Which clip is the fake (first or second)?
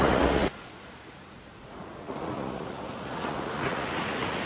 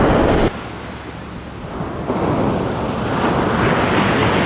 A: first